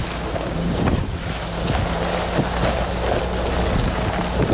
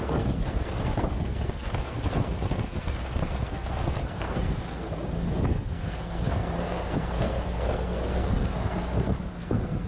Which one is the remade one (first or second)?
second